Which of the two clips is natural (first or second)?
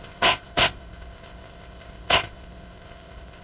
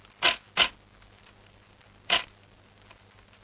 second